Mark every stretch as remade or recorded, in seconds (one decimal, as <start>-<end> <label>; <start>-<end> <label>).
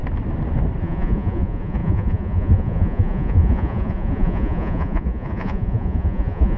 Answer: 0.0-0.8 recorded; 0.8-6.6 remade